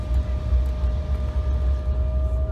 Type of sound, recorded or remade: recorded